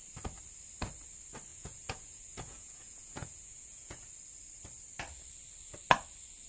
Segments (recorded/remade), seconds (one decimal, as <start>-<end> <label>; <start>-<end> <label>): 0.0-1.5 recorded; 1.5-4.1 remade; 4.1-6.5 recorded